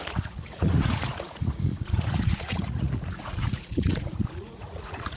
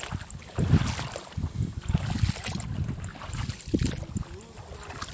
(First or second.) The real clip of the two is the second